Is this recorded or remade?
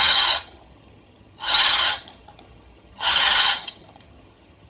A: remade